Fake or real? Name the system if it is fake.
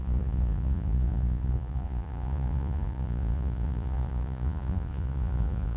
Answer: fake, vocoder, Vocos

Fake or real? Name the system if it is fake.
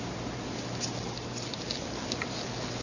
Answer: real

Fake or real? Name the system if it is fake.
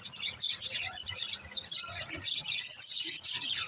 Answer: fake, vocoder, Vocos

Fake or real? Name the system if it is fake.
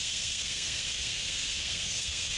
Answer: fake, codec, SNAC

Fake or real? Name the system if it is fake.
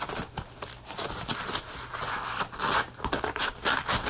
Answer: real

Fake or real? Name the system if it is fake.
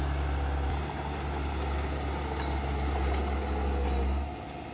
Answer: real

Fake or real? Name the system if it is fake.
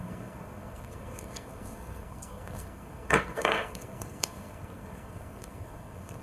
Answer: fake, codec, SNAC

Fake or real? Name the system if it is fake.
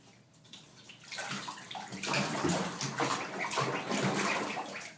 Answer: real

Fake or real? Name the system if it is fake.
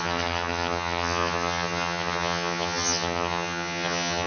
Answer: fake, vocoder, HiFi-GAN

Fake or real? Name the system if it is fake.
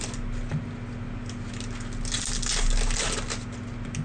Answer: real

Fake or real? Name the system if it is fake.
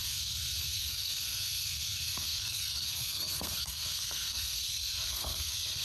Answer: fake, codec, SNAC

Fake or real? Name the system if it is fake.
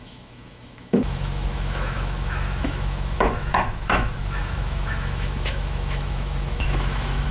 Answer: fake, autoencoder, DAC-VAE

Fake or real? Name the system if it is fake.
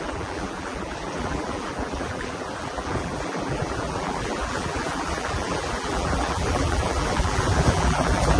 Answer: fake, vocoder, BigVGAN v2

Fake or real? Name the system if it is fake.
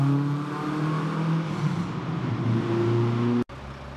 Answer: real